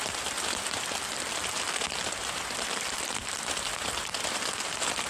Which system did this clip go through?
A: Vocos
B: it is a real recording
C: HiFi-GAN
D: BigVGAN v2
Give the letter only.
D